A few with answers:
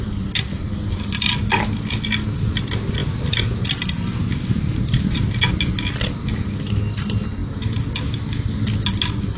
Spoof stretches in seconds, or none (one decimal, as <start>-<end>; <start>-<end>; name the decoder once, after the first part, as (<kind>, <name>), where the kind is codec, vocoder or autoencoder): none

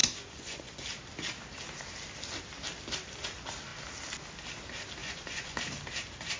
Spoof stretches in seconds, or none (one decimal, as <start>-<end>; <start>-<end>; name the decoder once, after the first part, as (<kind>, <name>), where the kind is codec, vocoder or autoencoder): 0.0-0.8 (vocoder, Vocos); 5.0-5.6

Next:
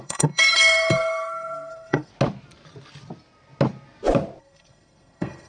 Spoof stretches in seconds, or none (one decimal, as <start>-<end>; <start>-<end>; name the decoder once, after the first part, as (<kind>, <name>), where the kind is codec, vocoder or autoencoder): 0.0-2.1 (codec, SNAC); 4.4-5.5

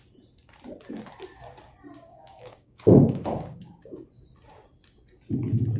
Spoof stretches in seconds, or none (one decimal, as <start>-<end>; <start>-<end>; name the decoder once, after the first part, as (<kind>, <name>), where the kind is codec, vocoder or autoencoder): 2.1-4.1 (codec, DAC)

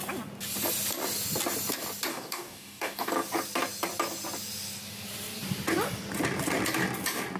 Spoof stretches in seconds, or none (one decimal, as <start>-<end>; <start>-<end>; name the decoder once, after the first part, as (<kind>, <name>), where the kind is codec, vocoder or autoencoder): 2.1-3.1 (codec, DAC)

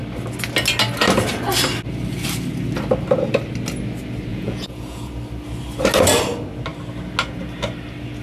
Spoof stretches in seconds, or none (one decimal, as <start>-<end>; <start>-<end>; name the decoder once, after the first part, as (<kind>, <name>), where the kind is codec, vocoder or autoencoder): 4.3-5.1 (vocoder, Vocos)

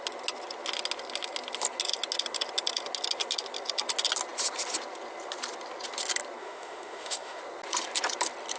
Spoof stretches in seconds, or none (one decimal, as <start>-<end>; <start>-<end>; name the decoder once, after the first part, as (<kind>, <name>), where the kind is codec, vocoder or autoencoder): 6.4-7.4 (autoencoder, DAC-VAE)